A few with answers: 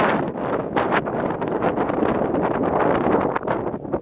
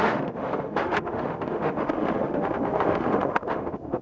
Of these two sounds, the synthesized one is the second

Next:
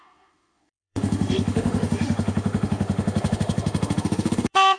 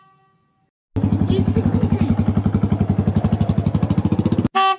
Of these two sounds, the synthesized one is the first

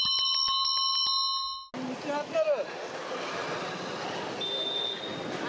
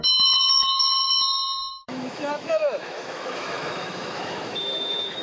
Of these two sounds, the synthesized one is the second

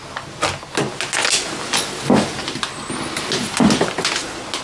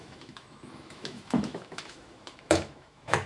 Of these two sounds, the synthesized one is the second